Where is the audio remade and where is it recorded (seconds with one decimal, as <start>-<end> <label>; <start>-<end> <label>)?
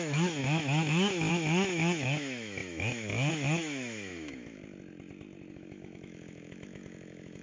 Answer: 0.0-4.6 remade; 4.6-5.5 recorded; 5.5-7.4 remade